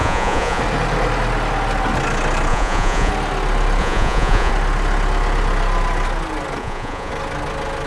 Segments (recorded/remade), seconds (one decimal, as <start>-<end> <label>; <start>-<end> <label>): 0.0-0.6 remade; 0.6-2.5 recorded; 2.5-3.1 remade; 3.1-3.8 recorded; 3.8-4.5 remade; 4.5-6.6 recorded; 6.6-7.1 remade; 7.1-7.9 recorded